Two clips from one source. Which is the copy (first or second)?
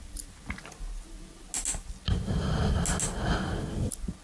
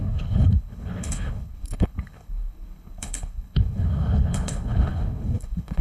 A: second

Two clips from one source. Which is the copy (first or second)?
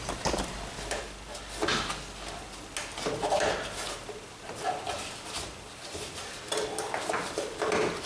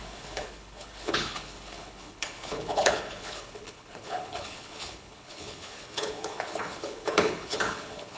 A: second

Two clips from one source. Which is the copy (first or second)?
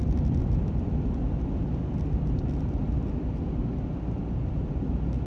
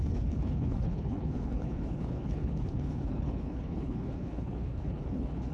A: second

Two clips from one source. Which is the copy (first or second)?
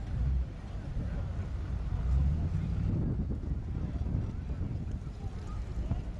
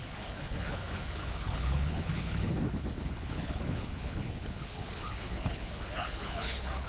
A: second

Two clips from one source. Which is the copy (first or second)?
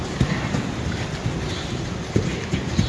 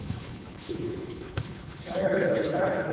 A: second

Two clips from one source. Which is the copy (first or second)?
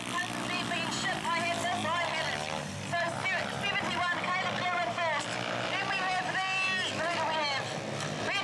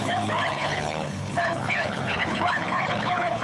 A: second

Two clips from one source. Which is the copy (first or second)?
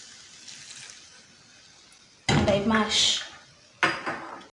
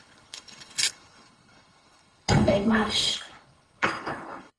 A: second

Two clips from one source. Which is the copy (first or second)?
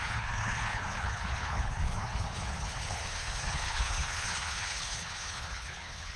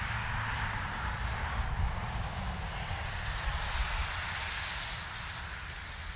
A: first